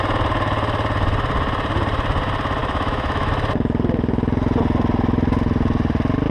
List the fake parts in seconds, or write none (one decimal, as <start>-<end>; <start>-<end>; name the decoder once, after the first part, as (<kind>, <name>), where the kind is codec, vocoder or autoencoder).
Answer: 2.6-3.3 (autoencoder, DAC-VAE)